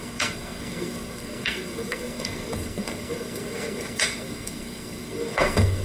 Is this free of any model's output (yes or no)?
no